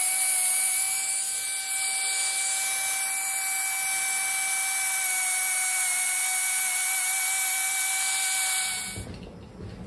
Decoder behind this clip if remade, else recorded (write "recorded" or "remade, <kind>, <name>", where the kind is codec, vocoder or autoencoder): recorded